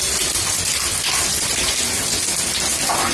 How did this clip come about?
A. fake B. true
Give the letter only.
B